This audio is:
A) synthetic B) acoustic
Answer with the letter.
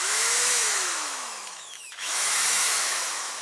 A